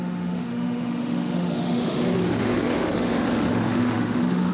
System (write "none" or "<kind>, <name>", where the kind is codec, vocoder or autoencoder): autoencoder, DAC-VAE